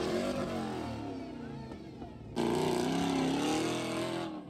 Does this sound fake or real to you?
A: real